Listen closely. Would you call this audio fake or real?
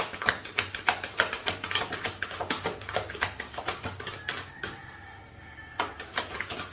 real